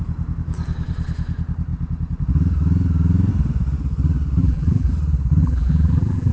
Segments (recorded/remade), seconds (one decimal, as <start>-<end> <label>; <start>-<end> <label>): 0.0-4.4 recorded; 4.4-4.9 remade; 4.9-5.4 recorded; 5.4-6.3 remade